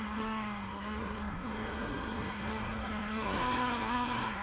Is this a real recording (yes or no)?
no